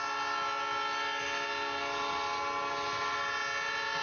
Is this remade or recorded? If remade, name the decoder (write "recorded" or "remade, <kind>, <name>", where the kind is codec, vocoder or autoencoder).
recorded